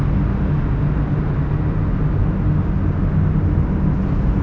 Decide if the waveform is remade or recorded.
recorded